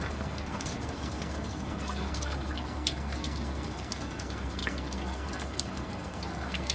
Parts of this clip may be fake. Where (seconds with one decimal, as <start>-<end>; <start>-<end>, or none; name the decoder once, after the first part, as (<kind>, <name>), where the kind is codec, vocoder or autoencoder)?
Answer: 0.0-6.7 (codec, SNAC)